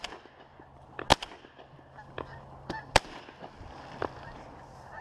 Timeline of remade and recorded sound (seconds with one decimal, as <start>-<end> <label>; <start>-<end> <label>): 0.0-5.0 recorded